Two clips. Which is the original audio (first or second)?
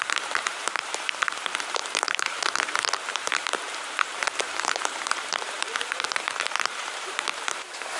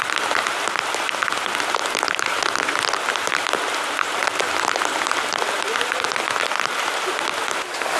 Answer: second